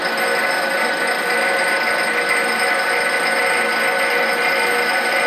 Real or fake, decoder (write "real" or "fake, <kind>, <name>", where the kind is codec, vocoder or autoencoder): real